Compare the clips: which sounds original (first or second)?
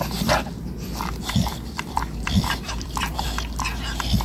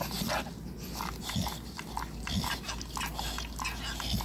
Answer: second